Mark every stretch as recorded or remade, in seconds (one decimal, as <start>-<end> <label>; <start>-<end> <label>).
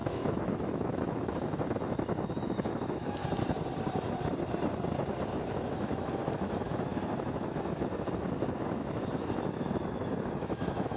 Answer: 0.0-3.2 remade; 3.2-5.3 recorded; 5.3-11.0 remade